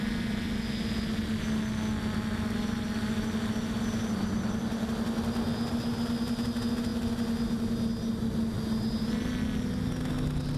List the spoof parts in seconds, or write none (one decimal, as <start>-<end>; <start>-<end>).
none